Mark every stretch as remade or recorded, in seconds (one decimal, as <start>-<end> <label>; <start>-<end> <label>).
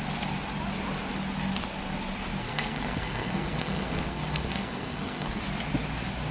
0.0-2.4 recorded; 2.4-5.4 remade; 5.4-6.3 recorded